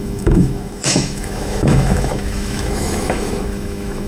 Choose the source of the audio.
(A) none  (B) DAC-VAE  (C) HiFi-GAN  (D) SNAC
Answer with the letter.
B